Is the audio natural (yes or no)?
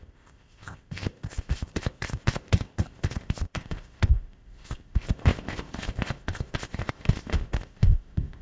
no